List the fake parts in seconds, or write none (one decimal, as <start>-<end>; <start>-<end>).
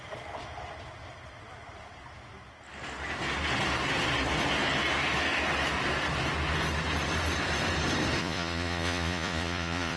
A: 8.2-10.0